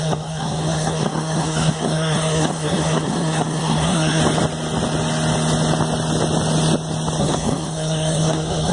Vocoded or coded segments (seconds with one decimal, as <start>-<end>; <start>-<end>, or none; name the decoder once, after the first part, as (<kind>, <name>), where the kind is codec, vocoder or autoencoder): 0.0-4.2 (codec, SNAC); 7.2-8.7